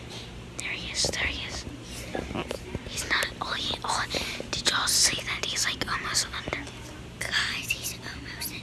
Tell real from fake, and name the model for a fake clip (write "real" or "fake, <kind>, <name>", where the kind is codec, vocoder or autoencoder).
real